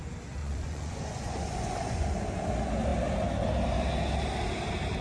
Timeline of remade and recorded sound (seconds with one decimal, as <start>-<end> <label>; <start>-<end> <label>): 0.0-0.4 recorded; 0.4-2.1 remade; 2.1-5.0 recorded